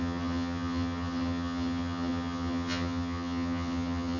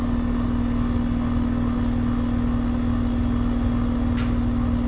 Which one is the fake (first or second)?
first